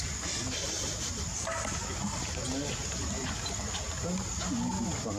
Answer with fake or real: real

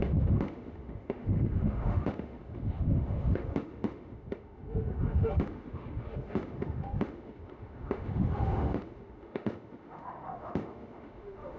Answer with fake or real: fake